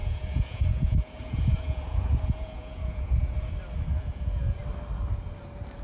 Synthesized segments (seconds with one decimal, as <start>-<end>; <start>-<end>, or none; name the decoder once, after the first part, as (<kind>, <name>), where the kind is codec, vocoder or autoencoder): 0.0-3.5 (vocoder, Vocos); 3.9-4.6